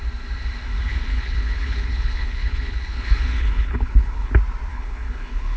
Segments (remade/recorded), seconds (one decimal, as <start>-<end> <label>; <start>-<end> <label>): 0.0-0.9 recorded; 0.9-4.3 remade; 4.3-4.7 recorded; 4.7-5.6 remade